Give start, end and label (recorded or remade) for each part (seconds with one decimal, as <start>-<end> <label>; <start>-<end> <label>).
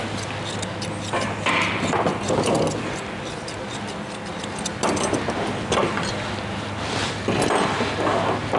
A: 0.0-8.6 recorded